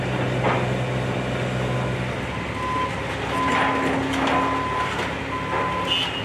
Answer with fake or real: real